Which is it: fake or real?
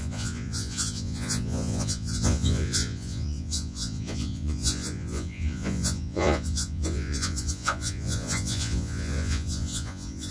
fake